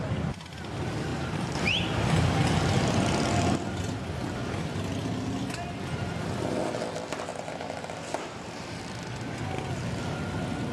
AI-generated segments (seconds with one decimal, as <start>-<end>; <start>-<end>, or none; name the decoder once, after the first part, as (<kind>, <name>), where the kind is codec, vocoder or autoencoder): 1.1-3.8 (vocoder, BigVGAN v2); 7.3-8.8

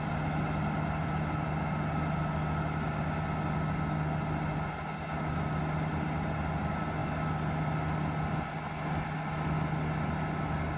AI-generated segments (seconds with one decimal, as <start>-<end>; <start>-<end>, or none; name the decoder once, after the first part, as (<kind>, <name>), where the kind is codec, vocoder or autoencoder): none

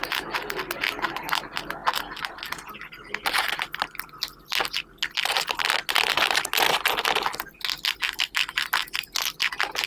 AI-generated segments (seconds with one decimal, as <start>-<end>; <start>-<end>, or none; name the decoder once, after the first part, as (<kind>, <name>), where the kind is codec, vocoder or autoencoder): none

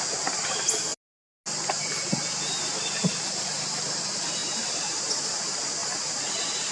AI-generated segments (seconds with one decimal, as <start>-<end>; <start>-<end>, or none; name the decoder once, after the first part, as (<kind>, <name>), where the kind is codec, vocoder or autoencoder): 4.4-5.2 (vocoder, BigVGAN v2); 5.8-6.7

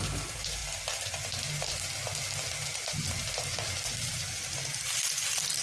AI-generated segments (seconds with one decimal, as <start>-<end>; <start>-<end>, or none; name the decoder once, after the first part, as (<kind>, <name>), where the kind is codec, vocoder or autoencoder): none

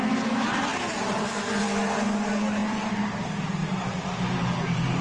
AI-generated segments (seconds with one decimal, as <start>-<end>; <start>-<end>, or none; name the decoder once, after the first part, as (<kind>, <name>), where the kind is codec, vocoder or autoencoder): 0.7-1.6 (vocoder, BigVGAN v2); 2.6-3.2; 3.6-5.0

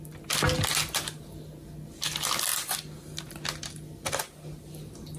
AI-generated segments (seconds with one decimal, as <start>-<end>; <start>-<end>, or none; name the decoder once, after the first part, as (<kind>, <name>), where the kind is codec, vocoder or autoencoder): none

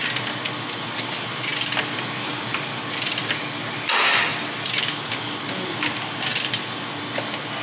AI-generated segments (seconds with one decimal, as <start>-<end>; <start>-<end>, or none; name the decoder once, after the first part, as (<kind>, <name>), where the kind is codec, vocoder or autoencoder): 4.3-5.1 (vocoder, BigVGAN v2); 6.3-7.0